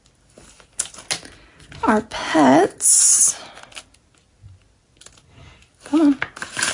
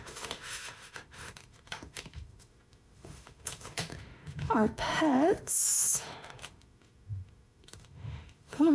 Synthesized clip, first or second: second